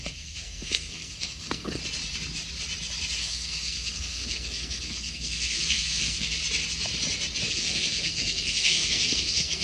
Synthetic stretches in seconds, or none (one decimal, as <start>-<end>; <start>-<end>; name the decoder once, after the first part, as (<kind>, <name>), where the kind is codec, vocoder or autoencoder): 0.0-1.8 (codec, SNAC); 3.2-6.4; 7.5-9.6